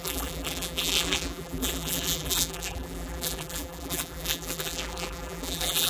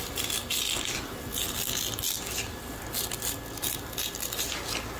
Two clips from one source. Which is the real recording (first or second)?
second